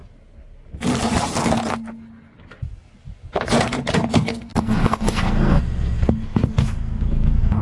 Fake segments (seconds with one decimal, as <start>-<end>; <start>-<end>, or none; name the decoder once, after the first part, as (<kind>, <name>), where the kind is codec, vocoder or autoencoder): 4.1-7.6 (codec, SNAC)